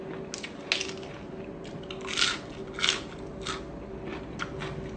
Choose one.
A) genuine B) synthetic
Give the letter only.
A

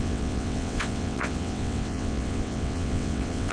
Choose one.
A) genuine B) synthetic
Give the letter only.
B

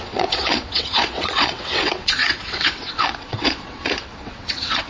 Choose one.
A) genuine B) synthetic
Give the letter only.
B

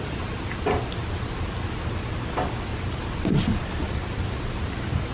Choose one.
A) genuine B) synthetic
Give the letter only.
A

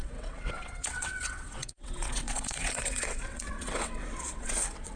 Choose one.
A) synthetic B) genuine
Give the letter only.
A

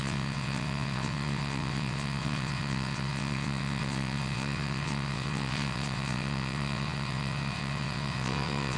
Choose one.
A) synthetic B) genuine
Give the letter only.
A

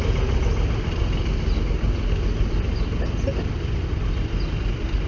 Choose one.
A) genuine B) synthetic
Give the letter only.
A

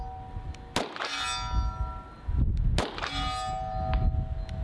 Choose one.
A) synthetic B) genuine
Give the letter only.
B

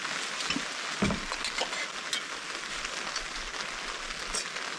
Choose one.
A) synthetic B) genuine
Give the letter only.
B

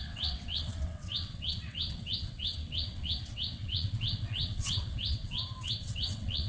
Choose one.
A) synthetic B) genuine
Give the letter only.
A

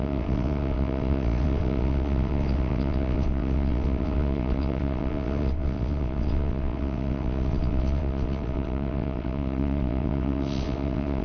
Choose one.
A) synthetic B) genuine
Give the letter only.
A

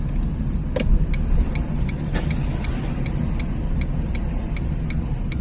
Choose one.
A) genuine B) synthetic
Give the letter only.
A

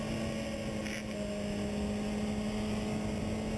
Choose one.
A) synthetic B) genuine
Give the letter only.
B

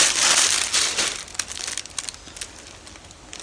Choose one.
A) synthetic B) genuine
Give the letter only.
B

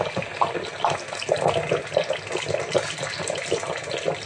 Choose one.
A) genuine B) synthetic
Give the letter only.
A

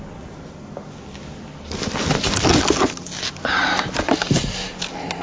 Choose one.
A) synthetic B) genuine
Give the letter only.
B